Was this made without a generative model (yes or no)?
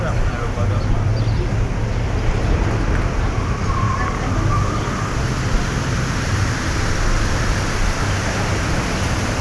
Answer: yes